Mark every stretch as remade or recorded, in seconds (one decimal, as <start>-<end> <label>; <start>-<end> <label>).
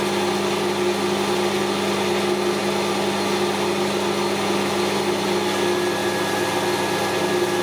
0.0-7.6 recorded